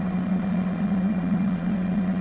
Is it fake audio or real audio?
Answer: fake